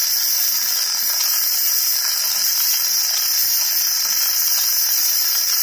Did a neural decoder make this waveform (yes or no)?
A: no